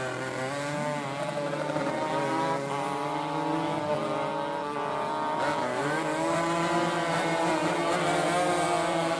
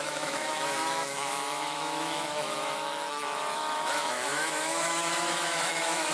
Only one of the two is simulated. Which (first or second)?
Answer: second